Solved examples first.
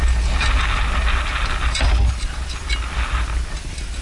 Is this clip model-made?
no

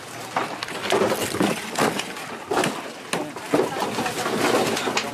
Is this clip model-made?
no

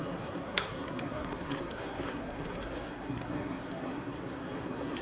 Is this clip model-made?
yes